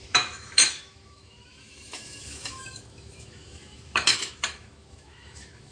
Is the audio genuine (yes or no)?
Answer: no